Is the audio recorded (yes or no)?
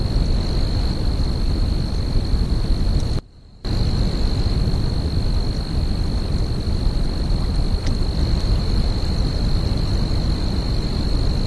yes